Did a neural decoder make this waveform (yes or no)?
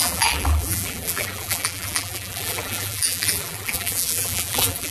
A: yes